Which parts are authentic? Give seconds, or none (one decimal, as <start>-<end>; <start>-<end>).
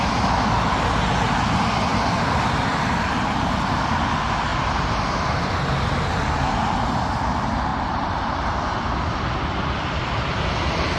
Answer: 0.0-4.5; 5.6-11.0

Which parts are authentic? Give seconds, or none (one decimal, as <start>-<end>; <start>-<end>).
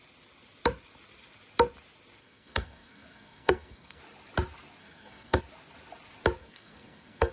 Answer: 0.0-2.2; 4.0-4.8; 5.4-6.4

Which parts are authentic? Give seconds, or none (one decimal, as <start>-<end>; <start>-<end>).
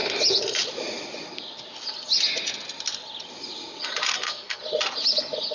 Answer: 0.0-4.1; 4.6-5.5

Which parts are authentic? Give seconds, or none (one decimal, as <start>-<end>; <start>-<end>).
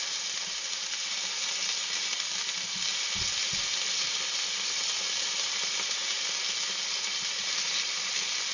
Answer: 0.0-8.5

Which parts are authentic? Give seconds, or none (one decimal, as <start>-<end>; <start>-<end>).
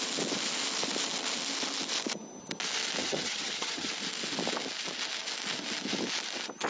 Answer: 0.0-3.0; 3.9-6.7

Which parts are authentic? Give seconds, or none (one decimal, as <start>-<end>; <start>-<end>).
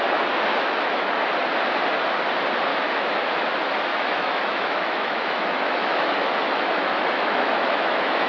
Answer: 0.0-0.5; 1.1-2.7; 3.2-3.9